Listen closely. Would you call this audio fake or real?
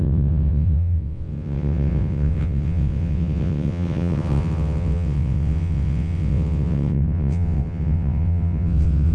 fake